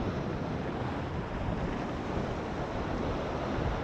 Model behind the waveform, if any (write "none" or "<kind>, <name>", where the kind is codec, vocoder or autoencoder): none